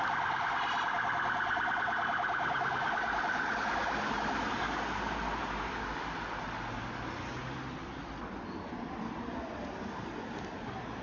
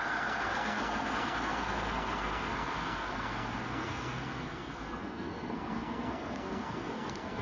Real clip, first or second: first